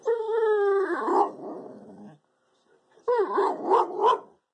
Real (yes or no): yes